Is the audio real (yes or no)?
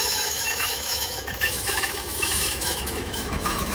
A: no